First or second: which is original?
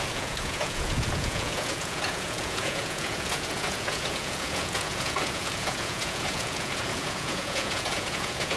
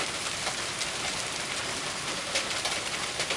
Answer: second